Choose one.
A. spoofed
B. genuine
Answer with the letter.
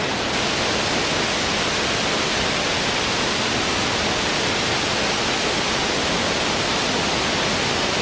B